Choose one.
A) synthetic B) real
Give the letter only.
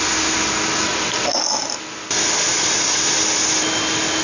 B